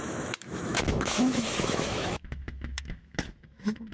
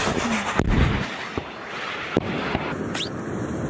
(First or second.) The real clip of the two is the second